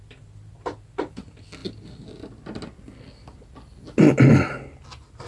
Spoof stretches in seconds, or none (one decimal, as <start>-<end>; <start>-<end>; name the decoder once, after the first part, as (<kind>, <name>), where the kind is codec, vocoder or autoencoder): none